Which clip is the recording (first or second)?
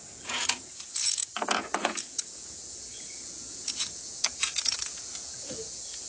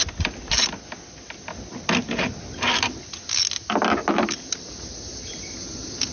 second